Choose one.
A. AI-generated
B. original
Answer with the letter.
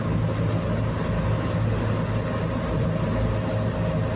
B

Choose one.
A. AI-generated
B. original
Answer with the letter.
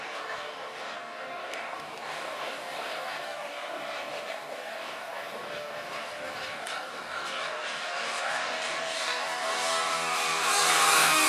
A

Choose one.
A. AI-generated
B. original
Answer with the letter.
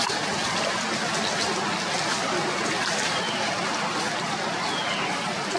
B